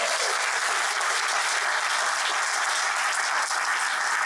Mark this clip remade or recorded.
recorded